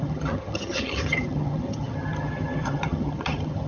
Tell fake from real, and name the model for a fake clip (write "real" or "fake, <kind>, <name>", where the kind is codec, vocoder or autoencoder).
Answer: fake, vocoder, HiFi-GAN